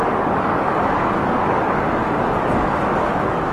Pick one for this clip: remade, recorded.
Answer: remade